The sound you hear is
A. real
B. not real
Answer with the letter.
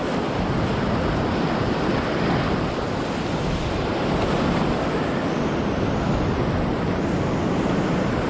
A